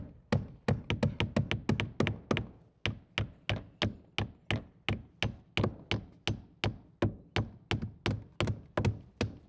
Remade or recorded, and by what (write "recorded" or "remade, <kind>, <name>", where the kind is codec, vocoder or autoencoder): recorded